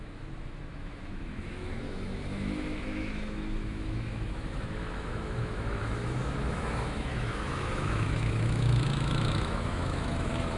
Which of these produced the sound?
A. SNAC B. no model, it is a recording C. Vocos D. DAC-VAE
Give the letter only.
D